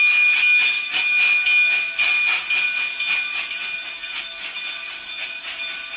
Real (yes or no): yes